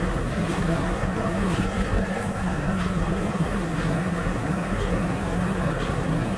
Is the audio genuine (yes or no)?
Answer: no